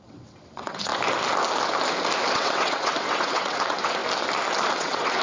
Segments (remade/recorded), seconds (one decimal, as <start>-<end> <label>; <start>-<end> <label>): 0.0-0.9 remade; 0.9-2.3 recorded; 2.3-4.0 remade; 4.0-4.7 recorded; 4.7-5.2 remade